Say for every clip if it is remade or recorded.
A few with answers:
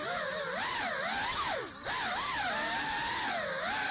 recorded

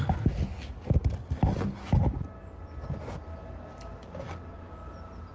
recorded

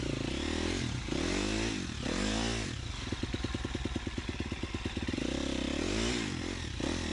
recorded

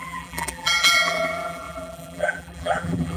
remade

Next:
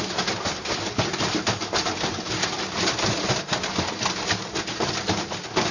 recorded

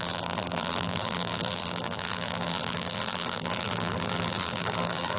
remade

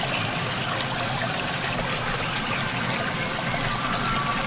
recorded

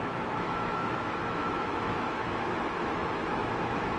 remade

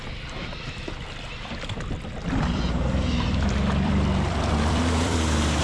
remade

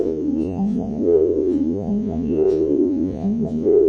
remade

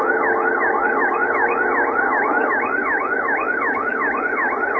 recorded